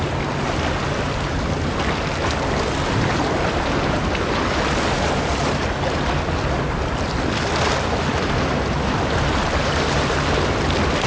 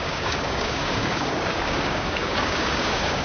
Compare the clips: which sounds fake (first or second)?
second